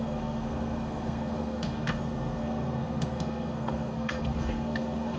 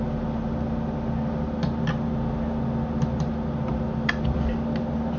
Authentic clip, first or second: second